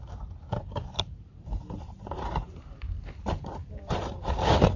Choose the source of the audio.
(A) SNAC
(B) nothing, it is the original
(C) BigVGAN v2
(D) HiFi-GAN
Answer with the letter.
C